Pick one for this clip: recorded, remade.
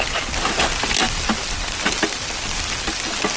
recorded